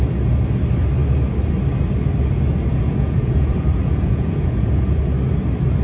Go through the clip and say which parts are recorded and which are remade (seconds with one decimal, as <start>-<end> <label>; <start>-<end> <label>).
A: 0.0-2.7 recorded; 2.7-5.0 remade; 5.0-5.8 recorded